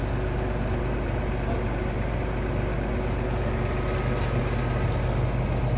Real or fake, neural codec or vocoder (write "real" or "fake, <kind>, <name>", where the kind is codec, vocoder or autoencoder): real